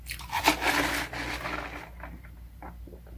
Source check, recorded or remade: recorded